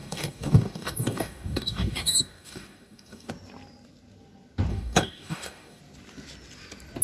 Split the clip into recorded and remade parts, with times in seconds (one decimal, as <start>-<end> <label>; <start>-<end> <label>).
0.0-3.3 remade; 3.3-4.7 recorded; 4.7-5.8 remade; 5.8-7.0 recorded

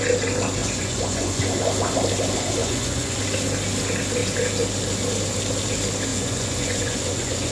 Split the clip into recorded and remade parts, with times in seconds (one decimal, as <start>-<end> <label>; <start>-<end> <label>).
0.0-0.6 recorded; 0.6-1.5 remade; 1.5-2.6 recorded; 2.6-3.2 remade; 3.2-6.1 recorded; 6.1-7.5 remade

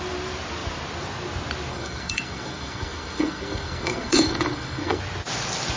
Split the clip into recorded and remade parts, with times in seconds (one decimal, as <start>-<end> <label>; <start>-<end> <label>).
0.0-1.7 recorded; 1.7-5.0 remade; 5.0-5.8 recorded